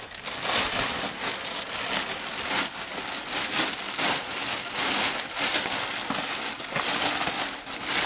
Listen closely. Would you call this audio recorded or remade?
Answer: recorded